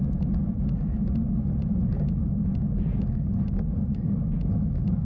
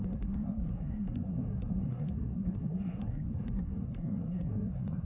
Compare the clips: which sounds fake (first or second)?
second